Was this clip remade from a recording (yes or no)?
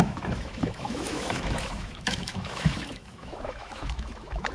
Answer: yes